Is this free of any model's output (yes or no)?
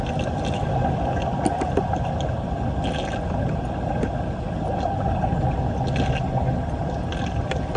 yes